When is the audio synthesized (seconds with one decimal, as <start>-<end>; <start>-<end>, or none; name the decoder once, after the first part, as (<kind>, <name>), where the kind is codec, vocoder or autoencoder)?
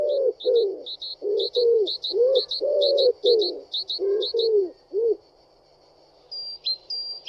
1.1-3.1 (vocoder, BigVGAN v2); 4.6-5.4